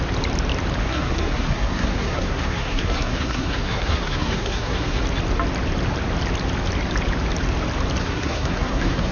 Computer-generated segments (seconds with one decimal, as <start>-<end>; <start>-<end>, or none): 0.8-5.0; 8.0-9.1

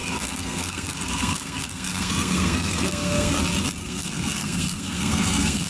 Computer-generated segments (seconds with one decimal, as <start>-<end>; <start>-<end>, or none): 0.0-3.4; 3.8-5.7

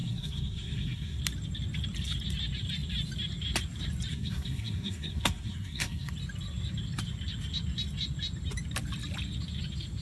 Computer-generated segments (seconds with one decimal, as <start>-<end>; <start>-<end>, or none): 0.0-1.2; 4.1-6.1

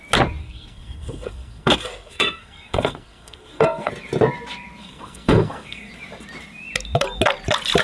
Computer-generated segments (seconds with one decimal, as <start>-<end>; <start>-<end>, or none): 0.4-3.9; 4.8-5.9